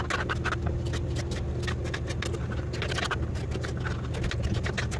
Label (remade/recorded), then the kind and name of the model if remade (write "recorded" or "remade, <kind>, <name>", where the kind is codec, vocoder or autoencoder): recorded